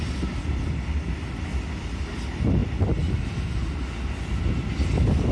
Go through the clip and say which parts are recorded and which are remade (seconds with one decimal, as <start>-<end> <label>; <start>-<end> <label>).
0.0-5.3 recorded